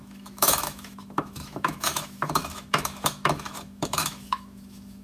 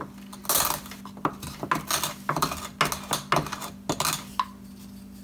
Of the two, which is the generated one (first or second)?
first